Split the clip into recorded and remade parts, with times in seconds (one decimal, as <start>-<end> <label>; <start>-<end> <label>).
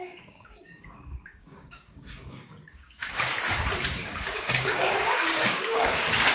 0.0-3.3 remade; 3.3-4.0 recorded; 4.0-6.3 remade